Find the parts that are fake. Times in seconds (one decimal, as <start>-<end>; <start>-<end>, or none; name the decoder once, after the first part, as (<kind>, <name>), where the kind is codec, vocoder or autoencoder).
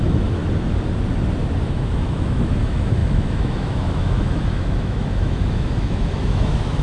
0.0-0.4 (autoencoder, DAC-VAE); 1.6-6.8